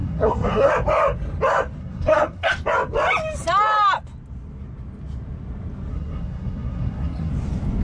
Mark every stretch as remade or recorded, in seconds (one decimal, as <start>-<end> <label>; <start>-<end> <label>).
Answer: 0.0-0.7 remade; 0.7-1.8 recorded; 1.8-2.5 remade; 2.5-5.9 recorded; 5.9-7.3 remade; 7.3-7.8 recorded